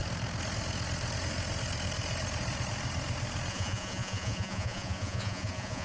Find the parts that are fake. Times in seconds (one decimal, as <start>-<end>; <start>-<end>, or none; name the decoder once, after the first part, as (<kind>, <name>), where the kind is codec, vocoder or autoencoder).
3.5-5.8 (vocoder, Vocos)